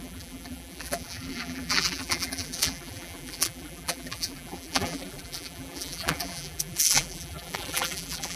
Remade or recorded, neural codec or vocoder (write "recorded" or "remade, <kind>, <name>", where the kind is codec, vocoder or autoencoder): remade, vocoder, BigVGAN v2